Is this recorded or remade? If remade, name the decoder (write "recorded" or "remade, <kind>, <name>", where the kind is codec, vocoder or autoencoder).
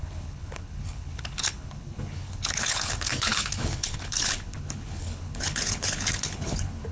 remade, codec, HILCodec